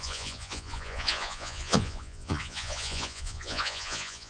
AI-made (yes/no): yes